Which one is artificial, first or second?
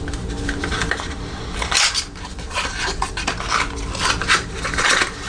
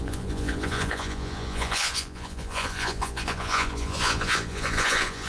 second